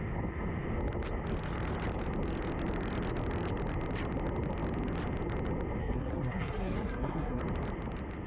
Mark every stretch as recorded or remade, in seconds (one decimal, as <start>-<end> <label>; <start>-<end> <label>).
0.0-5.8 recorded; 5.8-7.4 remade; 7.4-8.3 recorded